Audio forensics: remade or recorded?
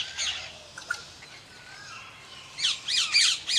recorded